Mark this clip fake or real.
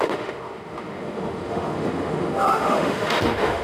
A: fake